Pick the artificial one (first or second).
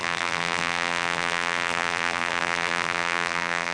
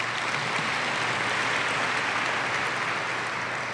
first